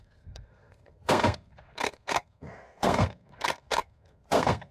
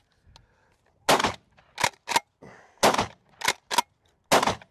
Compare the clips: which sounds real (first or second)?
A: second